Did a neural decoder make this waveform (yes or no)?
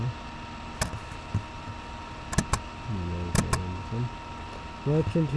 no